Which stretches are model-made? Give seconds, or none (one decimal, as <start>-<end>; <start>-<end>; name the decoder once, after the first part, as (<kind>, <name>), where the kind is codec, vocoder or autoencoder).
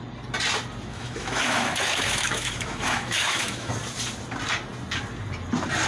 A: 0.9-3.7 (autoencoder, DAC-VAE)